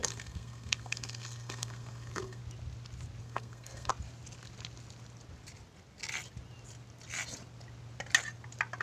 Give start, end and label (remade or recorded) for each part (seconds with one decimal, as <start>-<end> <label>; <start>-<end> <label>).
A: 0.0-2.4 remade; 2.4-3.2 recorded; 3.2-3.9 remade; 3.9-8.8 recorded